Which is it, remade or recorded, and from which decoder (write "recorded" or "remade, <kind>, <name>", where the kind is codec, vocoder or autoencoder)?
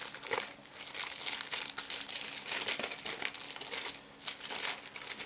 recorded